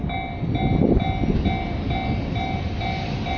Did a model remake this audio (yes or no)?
no